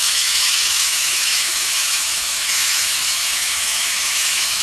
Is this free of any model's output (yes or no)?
no